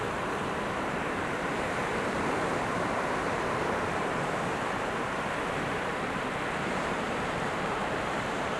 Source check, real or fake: fake